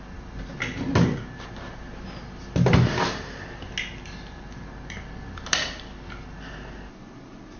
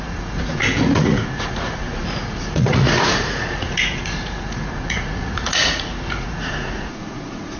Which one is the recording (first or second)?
first